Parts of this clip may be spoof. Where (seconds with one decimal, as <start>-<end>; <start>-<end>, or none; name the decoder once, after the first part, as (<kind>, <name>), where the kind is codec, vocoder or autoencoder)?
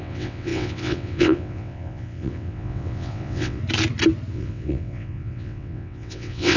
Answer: 0.0-3.6 (vocoder, WaveNeXt); 4.3-6.6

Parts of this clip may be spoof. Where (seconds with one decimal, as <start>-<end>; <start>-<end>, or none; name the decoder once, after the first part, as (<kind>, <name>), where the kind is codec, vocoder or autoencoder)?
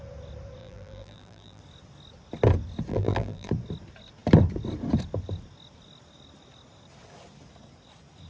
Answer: 0.6-1.6 (vocoder, BigVGAN v2); 2.9-3.5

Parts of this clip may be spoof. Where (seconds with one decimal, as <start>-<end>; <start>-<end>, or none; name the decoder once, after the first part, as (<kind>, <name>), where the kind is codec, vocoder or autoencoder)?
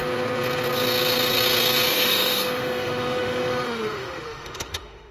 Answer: 1.9-5.1 (autoencoder, DAC-VAE)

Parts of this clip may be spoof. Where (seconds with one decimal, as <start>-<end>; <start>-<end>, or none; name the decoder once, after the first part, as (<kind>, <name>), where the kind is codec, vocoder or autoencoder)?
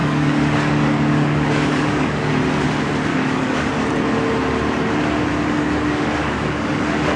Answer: 0.0-2.3 (codec, DAC); 3.1-3.7; 5.3-7.2